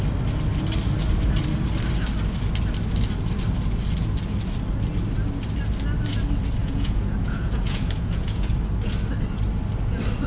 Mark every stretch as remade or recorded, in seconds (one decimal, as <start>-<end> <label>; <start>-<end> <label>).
0.0-6.6 recorded; 6.6-8.5 remade; 8.5-10.3 recorded